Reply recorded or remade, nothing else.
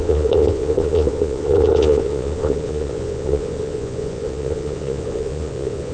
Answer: remade